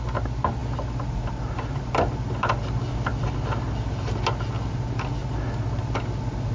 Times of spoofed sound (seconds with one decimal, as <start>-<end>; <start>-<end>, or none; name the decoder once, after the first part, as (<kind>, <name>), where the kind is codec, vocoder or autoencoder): none